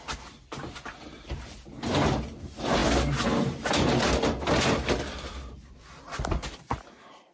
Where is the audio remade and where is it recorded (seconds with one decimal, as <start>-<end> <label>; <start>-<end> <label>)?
0.0-7.3 recorded